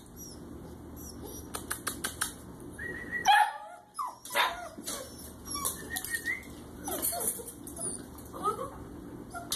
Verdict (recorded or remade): recorded